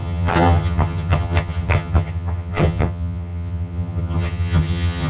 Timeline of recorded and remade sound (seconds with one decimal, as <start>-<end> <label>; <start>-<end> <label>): 0.0-5.1 remade